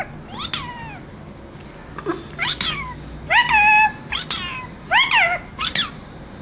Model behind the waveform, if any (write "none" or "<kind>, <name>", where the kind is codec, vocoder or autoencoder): none